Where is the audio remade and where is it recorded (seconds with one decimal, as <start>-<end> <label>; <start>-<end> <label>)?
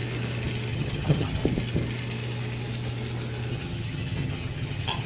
0.0-0.7 recorded; 0.7-1.4 remade; 1.4-3.5 recorded; 3.5-5.1 remade